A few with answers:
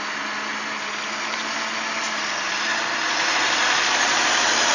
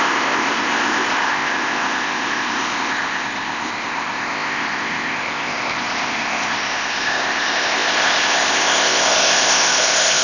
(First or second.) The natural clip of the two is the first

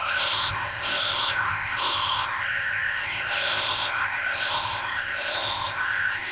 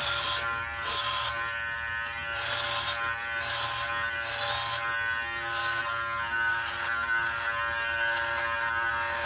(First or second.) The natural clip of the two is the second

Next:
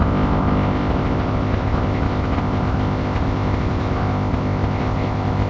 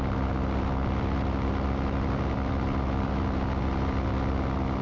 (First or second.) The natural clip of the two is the second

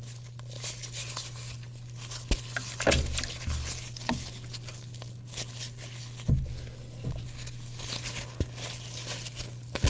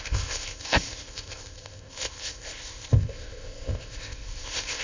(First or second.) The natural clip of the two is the first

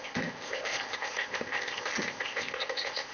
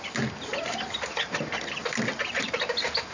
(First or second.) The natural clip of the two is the second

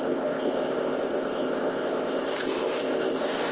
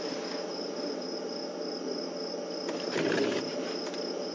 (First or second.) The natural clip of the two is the second